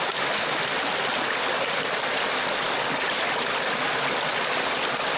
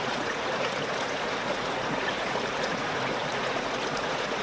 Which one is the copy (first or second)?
second